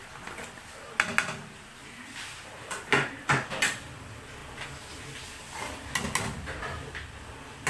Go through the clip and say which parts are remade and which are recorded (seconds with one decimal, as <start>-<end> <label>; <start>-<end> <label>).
0.0-7.7 recorded